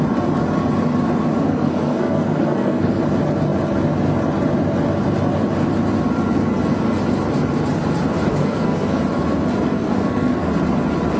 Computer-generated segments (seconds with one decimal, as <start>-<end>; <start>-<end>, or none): 1.5-3.0; 8.3-9.0; 9.7-10.5

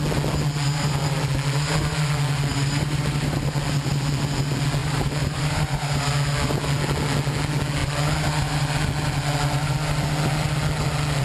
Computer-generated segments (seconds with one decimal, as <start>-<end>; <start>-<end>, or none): 2.5-3.5; 4.8-6.0

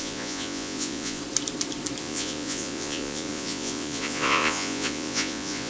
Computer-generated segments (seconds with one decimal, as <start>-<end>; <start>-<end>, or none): 0.0-1.2; 2.0-5.7

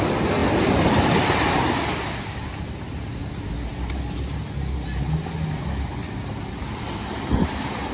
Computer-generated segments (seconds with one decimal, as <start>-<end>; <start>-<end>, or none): 5.9-6.9

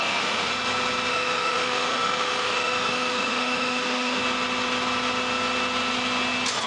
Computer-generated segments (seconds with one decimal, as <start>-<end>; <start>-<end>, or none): 0.0-0.5; 1.1-4.2

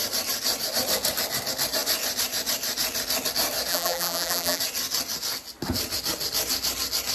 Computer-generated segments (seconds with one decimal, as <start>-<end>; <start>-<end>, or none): 3.7-4.6

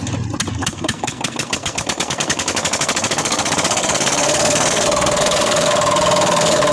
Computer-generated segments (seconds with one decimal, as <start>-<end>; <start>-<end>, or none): 0.5-6.7

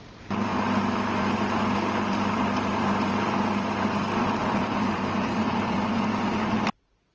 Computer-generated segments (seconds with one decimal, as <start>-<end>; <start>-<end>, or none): 0.0-7.1